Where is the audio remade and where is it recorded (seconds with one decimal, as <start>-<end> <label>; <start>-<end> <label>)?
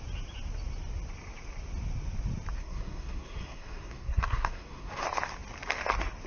0.0-2.6 recorded; 2.6-5.0 remade; 5.0-6.3 recorded